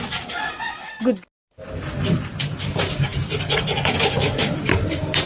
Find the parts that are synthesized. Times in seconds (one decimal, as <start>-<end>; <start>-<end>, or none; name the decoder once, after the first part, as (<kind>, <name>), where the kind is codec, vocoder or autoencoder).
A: none